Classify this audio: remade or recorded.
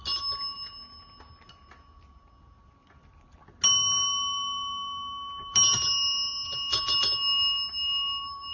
recorded